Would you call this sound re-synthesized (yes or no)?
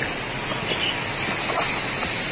no